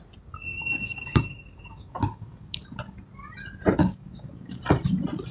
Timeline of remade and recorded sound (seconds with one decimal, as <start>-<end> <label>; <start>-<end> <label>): 0.0-0.5 recorded; 0.5-2.6 remade; 2.6-3.8 recorded; 3.8-4.6 remade; 4.6-5.3 recorded